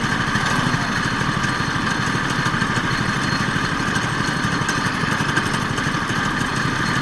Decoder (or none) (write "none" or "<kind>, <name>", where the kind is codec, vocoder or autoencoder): none